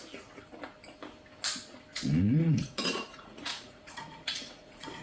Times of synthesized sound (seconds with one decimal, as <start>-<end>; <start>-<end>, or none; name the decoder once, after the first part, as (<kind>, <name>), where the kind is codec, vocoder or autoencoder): 1.9-5.0 (vocoder, Vocos)